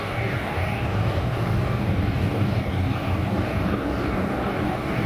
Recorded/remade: remade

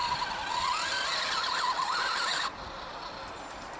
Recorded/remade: recorded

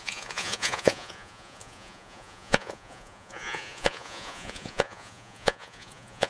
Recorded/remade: remade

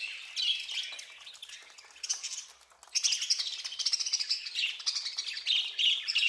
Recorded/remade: recorded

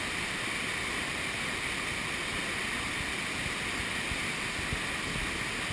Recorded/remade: recorded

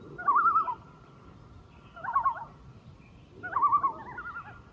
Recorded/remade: recorded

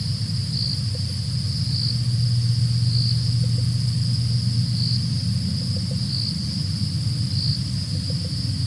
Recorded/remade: recorded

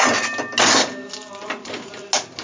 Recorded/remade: recorded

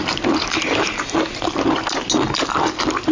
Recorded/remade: recorded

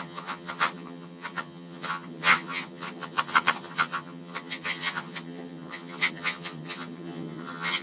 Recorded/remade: remade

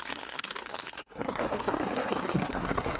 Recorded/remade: remade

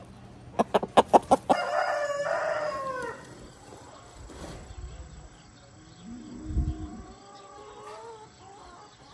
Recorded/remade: recorded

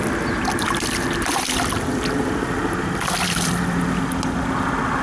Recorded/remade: recorded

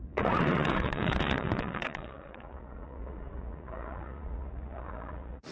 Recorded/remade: remade